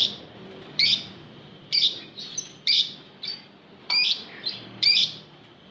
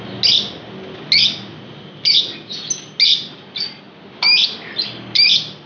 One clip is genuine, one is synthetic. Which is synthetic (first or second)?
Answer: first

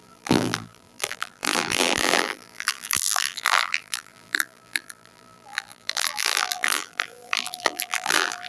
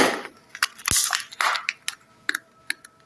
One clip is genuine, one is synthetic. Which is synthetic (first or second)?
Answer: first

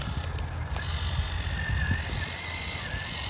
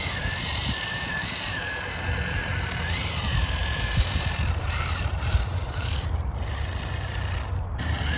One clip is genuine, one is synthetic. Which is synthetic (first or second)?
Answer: second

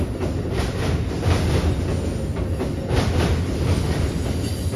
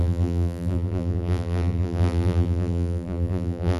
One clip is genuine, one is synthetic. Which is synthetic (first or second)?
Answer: second